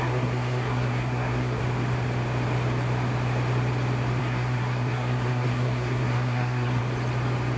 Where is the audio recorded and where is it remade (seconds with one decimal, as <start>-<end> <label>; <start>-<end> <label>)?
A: 0.0-1.6 remade; 1.6-4.2 recorded; 4.2-6.8 remade; 6.8-7.6 recorded